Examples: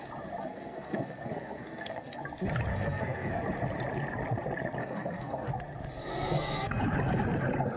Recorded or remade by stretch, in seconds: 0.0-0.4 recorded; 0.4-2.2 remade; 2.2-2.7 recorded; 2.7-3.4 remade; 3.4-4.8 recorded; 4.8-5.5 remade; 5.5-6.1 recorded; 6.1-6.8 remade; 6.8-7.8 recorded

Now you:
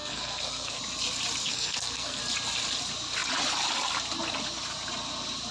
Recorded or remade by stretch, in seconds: 0.0-0.8 remade; 0.8-1.4 recorded; 1.4-2.2 remade; 2.2-5.5 recorded

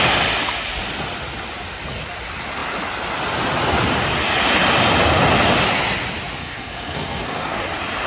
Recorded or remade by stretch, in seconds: 0.0-6.4 recorded; 6.4-7.6 remade; 7.6-8.1 recorded